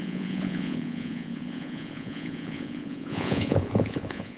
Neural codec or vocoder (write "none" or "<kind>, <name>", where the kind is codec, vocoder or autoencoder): vocoder, Vocos